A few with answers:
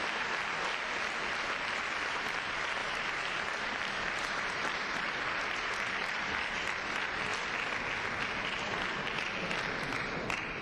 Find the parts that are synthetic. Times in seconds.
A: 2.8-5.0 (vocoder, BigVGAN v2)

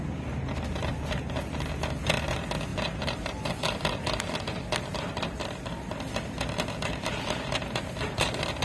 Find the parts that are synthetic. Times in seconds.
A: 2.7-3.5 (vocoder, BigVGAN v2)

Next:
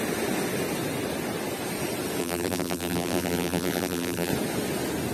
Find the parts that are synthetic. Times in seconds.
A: 2.2-4.3 (vocoder, BigVGAN v2)